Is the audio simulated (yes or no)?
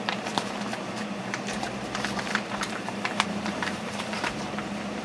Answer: yes